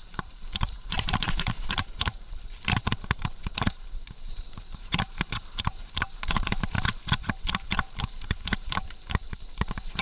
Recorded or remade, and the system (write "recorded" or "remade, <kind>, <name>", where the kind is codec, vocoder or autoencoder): remade, vocoder, BigVGAN v2